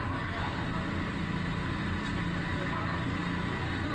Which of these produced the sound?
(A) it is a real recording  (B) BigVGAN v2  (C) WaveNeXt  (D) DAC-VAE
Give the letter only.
A